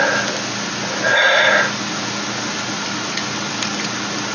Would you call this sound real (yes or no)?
yes